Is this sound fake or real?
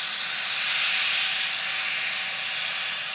real